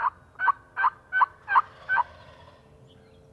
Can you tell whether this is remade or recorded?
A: recorded